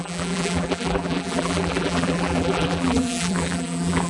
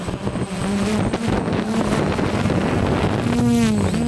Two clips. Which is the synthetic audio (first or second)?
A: first